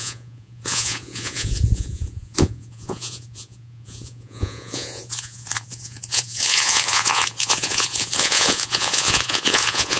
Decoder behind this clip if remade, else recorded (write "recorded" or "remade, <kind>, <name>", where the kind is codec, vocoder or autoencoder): remade, vocoder, Vocos